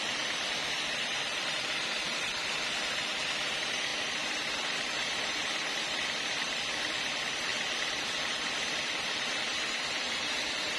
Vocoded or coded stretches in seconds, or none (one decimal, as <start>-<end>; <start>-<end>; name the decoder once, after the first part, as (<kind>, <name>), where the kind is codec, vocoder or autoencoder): 0.0-3.9 (vocoder, BigVGAN v2); 4.5-10.8

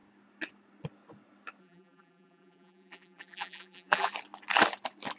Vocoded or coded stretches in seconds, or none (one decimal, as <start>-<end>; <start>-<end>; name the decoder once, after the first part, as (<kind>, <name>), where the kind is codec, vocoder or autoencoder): 1.6-4.1 (vocoder, BigVGAN v2)

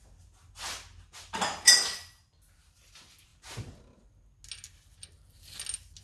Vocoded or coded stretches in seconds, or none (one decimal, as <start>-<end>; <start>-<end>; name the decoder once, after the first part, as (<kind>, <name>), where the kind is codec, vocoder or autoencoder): none

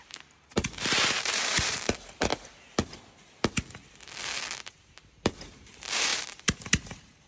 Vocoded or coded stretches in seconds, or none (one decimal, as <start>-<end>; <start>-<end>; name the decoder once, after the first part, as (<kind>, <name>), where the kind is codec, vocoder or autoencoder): 0.0-2.3 (vocoder, BigVGAN v2); 5.1-7.3

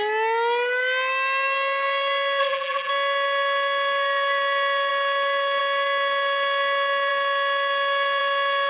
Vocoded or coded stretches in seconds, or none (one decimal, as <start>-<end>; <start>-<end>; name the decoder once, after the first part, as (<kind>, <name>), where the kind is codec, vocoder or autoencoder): 2.4-2.9 (vocoder, BigVGAN v2)

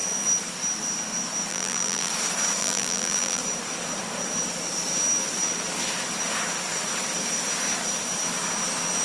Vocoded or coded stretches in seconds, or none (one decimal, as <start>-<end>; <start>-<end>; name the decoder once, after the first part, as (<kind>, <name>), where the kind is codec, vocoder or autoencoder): 1.5-2.1 (vocoder, BigVGAN v2); 2.6-3.4

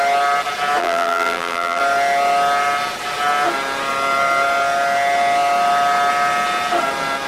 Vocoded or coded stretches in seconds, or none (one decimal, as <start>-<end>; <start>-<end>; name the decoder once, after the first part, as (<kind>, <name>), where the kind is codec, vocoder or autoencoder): 0.8-1.8 (vocoder, BigVGAN v2)

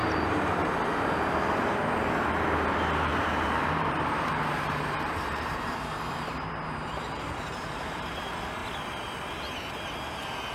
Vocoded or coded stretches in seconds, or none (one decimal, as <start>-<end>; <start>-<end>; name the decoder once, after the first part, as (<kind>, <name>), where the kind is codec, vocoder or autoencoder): 0.0-0.7 (vocoder, BigVGAN v2); 3.1-8.2